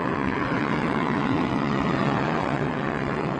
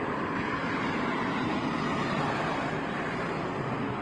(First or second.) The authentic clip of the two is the second